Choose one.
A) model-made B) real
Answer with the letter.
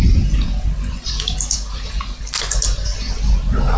B